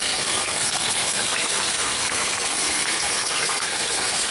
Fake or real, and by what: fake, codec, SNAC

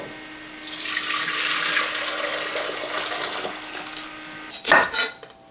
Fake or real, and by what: real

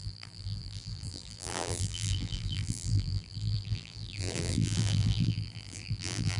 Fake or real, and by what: fake, vocoder, BigVGAN v2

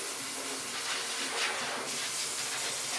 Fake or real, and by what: real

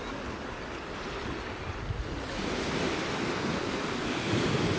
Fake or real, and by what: real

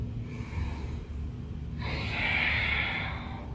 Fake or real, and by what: real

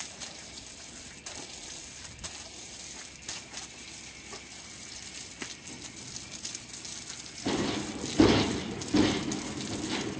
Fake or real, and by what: real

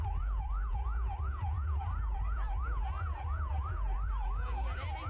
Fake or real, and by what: fake, vocoder, Vocos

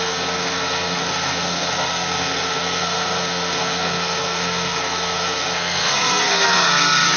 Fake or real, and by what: fake, codec, SNAC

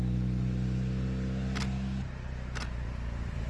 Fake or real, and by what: real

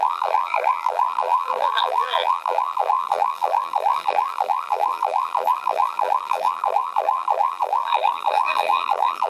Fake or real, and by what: fake, vocoder, BigVGAN v2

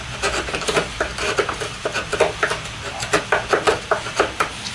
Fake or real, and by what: real